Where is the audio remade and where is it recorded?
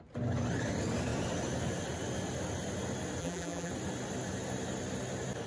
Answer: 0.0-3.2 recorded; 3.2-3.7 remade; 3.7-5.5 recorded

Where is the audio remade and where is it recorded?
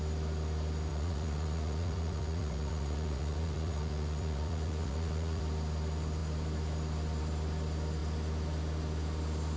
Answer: 0.0-0.9 recorded; 0.9-5.4 remade; 5.4-9.6 recorded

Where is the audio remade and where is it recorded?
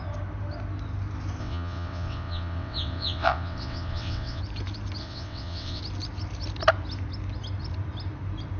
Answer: 0.0-1.4 recorded; 1.4-4.4 remade; 4.4-5.0 recorded; 5.0-5.8 remade; 5.8-8.6 recorded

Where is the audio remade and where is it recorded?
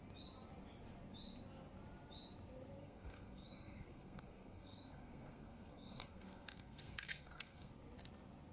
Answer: 0.0-2.8 recorded; 2.8-7.7 remade; 7.7-8.5 recorded